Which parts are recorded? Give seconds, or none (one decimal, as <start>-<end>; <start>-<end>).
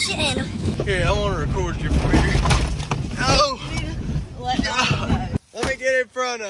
1.1-6.5